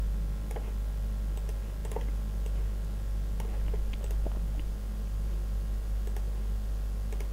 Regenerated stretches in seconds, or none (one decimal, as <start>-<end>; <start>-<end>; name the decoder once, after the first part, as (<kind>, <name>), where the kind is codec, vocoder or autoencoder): none